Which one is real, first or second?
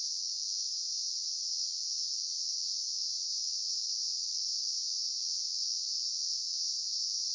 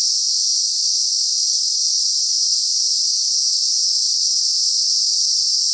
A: second